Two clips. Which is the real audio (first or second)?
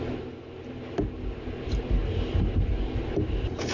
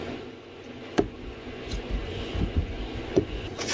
first